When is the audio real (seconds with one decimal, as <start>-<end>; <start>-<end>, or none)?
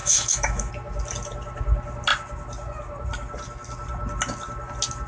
0.7-5.1